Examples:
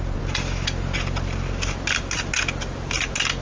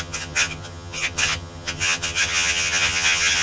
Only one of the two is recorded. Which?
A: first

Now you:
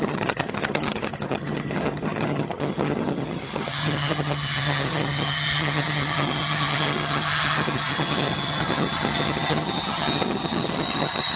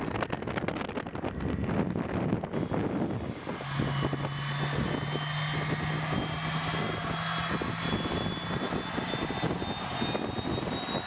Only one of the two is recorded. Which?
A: second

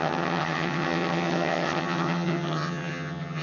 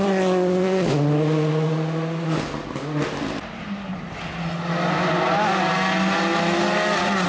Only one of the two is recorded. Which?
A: second